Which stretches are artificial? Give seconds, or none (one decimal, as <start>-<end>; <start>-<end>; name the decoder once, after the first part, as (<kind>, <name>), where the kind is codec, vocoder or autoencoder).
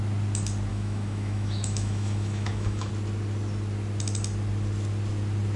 0.7-2.9 (autoencoder, DAC-VAE)